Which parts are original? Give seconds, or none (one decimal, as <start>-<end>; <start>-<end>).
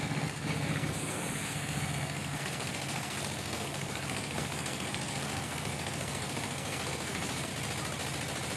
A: 7.5-8.6